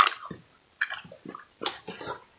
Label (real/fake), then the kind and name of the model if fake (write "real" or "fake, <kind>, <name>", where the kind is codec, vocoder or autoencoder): real